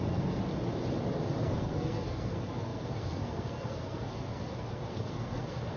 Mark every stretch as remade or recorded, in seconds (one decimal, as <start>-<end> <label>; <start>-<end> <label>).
0.0-0.4 remade; 0.4-1.4 recorded; 1.4-5.8 remade